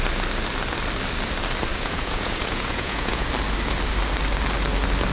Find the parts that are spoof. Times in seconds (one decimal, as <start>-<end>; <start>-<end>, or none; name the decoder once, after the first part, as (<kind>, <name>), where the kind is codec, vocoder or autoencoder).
1.7-3.3 (vocoder, Vocos)

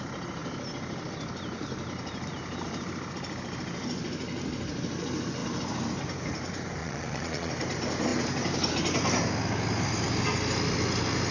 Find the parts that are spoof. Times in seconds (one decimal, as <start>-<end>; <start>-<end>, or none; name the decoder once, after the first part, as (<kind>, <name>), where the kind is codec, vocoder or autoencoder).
6.8-7.5 (vocoder, Vocos)